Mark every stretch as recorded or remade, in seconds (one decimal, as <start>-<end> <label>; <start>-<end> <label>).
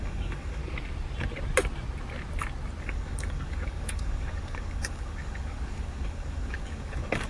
0.0-0.6 remade; 0.6-2.8 recorded; 2.8-7.3 remade